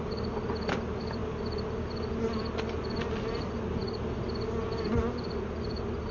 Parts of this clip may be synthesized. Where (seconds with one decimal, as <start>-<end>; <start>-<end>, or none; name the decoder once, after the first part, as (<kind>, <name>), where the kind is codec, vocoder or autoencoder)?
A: none